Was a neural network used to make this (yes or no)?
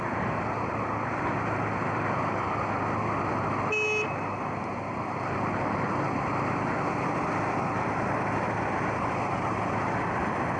no